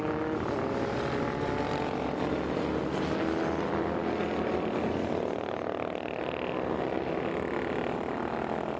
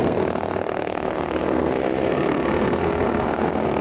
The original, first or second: first